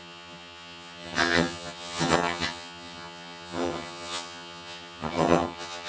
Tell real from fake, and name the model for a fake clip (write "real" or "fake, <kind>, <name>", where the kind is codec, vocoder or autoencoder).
fake, vocoder, HiFi-GAN